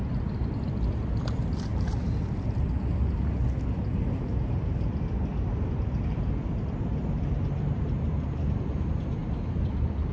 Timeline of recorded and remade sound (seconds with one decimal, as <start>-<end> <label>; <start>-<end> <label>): 0.0-5.3 recorded; 5.3-8.5 remade; 8.5-9.2 recorded; 9.2-10.1 remade